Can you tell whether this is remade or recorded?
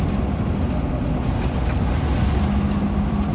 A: recorded